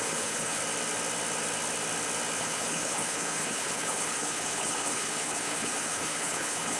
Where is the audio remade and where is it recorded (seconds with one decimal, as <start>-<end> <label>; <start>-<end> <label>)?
0.0-0.6 remade; 0.6-2.4 recorded; 2.4-6.8 remade